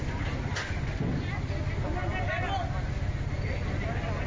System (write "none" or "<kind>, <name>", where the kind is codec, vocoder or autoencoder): none